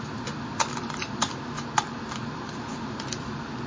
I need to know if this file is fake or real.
fake